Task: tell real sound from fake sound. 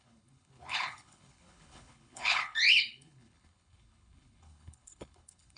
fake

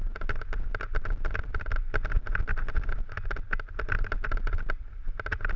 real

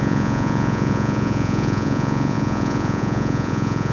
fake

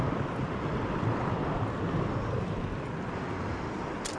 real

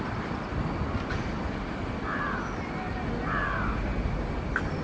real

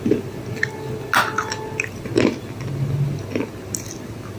real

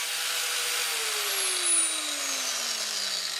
real